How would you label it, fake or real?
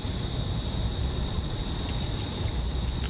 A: real